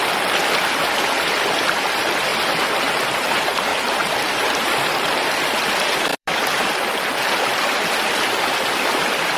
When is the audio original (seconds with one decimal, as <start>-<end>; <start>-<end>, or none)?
none